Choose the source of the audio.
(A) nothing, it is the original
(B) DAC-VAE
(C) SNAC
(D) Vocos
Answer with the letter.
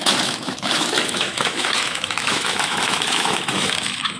B